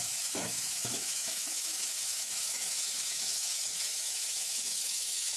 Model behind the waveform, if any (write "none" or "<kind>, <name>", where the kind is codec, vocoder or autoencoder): autoencoder, DAC-VAE